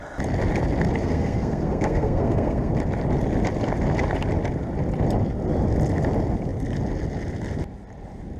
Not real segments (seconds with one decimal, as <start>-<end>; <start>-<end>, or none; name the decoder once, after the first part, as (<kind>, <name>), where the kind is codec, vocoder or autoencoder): 1.0-2.7 (codec, SNAC)